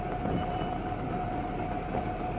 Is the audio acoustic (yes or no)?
yes